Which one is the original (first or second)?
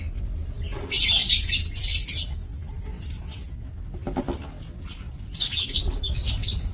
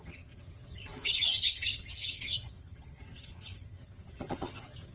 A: first